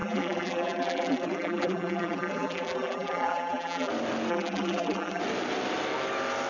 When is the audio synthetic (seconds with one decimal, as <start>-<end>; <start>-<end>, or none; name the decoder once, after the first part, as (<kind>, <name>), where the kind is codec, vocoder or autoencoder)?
0.0-3.9 (vocoder, BigVGAN v2); 4.3-5.2